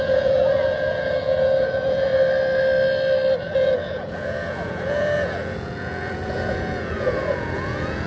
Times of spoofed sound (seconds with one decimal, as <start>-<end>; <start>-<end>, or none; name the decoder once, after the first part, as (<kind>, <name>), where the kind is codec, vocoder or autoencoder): 0.0-2.1 (vocoder, Vocos); 3.4-8.1